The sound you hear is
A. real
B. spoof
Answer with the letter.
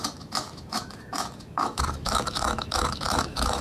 B